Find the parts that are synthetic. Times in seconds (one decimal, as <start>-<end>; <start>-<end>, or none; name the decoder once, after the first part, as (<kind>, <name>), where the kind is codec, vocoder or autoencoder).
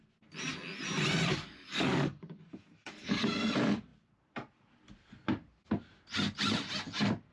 1.3-3.4 (codec, DAC)